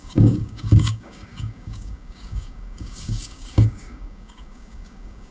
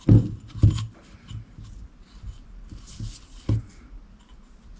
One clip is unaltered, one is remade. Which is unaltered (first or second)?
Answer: second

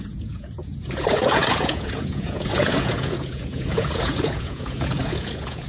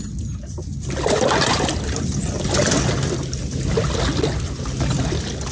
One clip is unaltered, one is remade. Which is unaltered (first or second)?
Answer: second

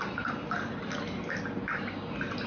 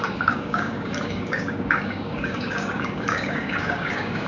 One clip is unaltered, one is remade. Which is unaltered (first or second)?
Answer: first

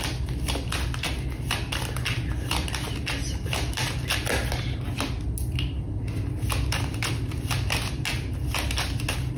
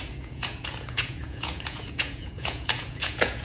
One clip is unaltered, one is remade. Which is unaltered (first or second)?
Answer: first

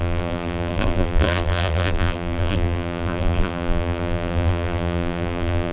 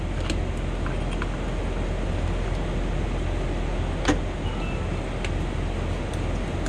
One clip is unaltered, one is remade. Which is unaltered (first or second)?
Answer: second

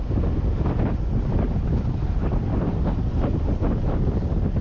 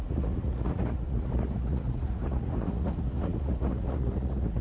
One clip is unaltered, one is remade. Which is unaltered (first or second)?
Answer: first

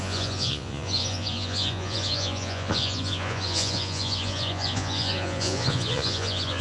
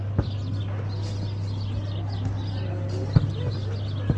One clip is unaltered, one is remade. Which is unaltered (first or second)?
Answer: second